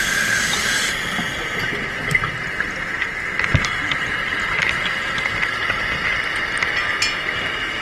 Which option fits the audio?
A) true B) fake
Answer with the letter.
A